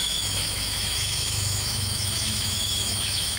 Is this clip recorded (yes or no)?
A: no